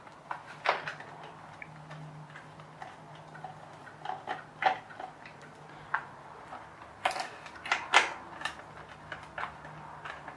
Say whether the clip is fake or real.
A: real